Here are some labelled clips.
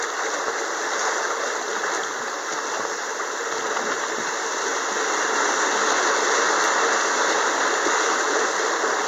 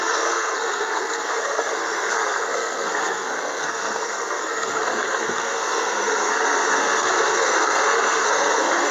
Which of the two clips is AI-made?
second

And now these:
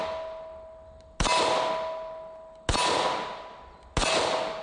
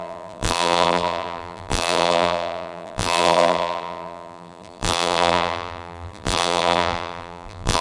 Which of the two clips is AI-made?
second